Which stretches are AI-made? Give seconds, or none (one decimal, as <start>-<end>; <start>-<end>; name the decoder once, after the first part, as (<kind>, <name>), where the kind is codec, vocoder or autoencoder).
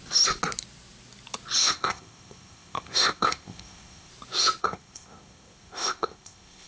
1.6-4.1 (codec, ZipCodec); 4.6-6.7